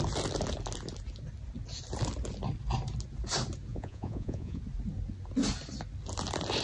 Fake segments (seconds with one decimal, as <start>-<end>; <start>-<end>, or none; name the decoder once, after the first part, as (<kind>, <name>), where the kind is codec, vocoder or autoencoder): 3.7-4.6 (vocoder, Vocos)